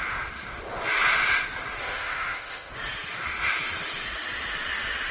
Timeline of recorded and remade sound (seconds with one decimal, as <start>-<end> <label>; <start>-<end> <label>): 0.0-1.8 recorded; 1.8-2.7 remade; 2.7-5.1 recorded